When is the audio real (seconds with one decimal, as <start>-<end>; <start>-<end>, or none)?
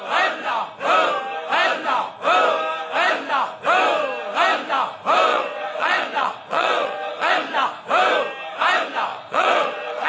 0.0-5.3; 7.3-9.1